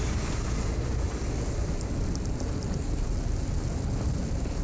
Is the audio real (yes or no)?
yes